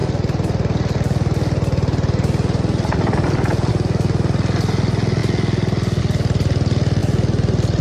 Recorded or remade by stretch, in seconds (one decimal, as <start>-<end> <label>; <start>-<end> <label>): 0.0-7.8 recorded